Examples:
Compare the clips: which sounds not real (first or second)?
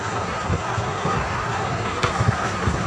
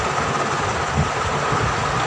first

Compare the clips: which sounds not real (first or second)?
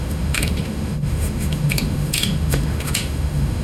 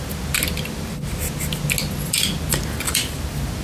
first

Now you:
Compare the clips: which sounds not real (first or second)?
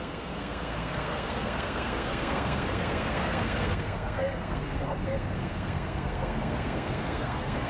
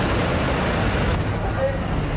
first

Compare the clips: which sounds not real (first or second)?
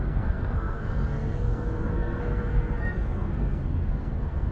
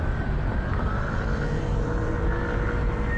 first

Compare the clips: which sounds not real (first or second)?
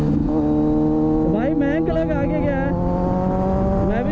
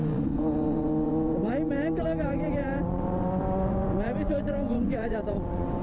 second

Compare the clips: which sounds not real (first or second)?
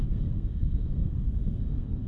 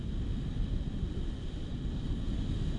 first